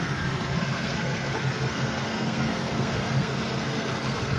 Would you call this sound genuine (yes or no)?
no